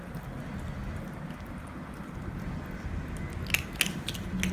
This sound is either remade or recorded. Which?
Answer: recorded